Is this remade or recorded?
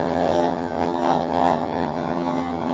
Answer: remade